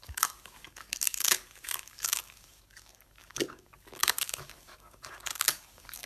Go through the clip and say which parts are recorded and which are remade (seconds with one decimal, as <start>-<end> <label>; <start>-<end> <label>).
0.0-6.1 remade